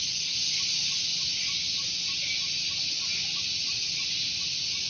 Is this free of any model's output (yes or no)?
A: yes